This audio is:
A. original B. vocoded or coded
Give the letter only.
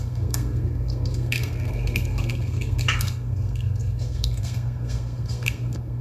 B